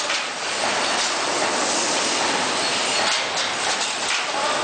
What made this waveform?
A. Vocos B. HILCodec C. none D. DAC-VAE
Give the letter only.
C